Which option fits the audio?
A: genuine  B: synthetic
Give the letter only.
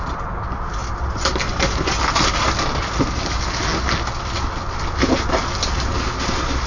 A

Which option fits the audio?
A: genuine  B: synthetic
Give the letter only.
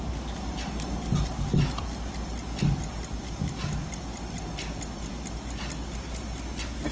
A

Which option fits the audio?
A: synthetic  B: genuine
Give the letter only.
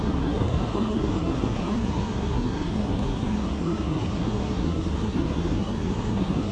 A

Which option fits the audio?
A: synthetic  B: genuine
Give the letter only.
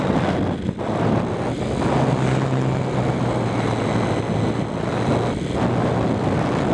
B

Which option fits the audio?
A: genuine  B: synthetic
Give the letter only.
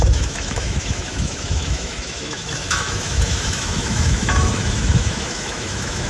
B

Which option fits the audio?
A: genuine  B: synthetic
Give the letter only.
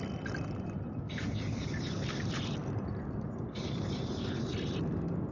A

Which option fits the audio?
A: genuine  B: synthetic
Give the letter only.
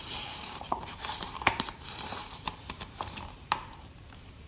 B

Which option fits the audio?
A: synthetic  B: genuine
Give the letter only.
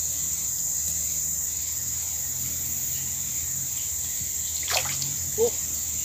B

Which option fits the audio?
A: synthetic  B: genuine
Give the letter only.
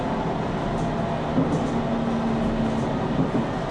B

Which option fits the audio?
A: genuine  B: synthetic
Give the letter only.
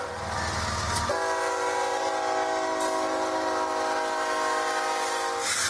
A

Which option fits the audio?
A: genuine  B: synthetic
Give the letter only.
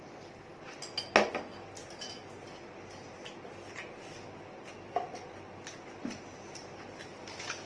A